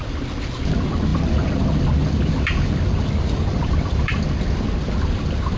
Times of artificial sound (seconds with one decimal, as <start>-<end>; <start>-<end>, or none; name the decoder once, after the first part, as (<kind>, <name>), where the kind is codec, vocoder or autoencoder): 1.1-4.2 (vocoder, BigVGAN v2)